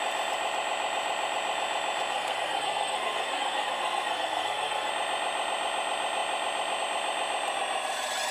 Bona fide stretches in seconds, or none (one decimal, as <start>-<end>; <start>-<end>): 0.0-2.1; 4.9-8.3